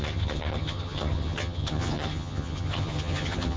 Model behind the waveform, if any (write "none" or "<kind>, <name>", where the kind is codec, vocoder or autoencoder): vocoder, HiFi-GAN